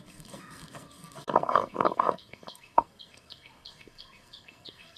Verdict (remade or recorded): remade